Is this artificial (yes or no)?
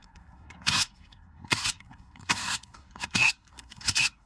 yes